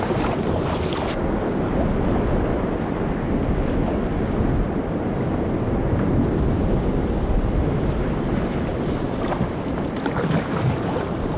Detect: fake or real real